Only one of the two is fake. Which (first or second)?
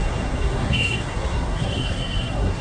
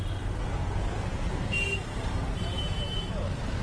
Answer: first